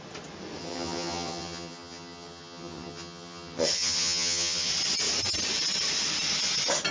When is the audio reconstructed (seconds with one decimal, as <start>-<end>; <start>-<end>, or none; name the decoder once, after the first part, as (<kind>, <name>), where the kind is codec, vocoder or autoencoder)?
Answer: 0.6-4.7 (vocoder, HiFi-GAN)